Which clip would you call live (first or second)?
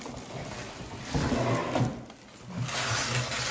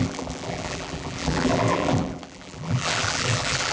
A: first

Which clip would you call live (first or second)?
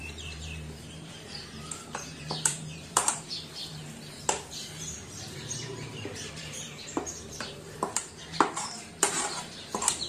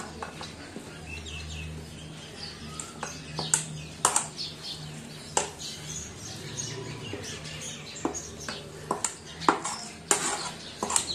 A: second